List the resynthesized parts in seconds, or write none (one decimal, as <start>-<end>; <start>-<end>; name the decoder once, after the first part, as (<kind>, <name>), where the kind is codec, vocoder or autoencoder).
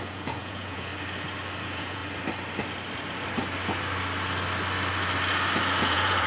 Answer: 0.0-0.9 (vocoder, Vocos); 1.6-2.0; 5.8-6.3